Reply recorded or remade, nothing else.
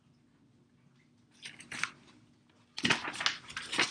recorded